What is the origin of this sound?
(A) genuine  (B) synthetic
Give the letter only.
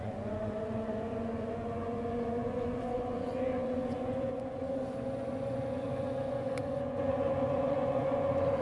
B